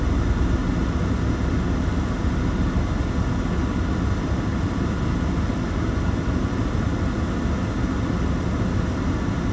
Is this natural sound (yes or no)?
yes